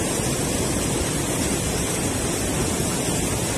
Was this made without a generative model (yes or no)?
yes